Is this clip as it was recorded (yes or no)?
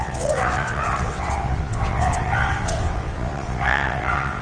no